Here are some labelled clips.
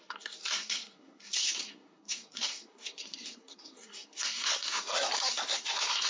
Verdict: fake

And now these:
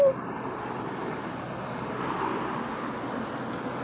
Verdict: real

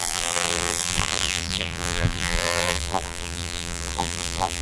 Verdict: fake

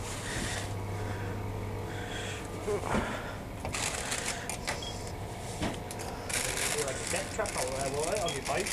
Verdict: real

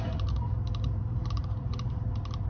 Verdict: fake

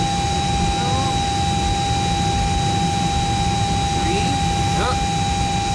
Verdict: real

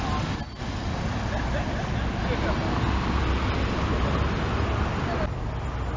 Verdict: real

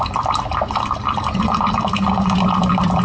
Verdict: real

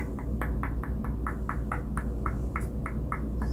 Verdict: real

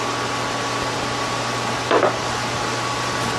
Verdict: real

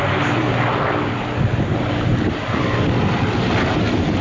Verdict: real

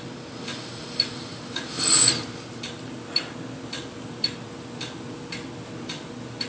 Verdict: real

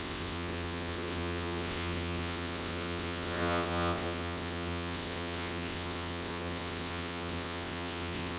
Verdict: fake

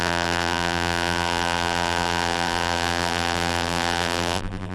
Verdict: fake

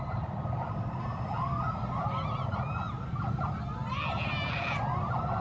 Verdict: real